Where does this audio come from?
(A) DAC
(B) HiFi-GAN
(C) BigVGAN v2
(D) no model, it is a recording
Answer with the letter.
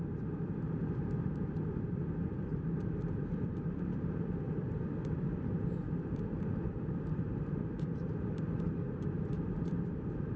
C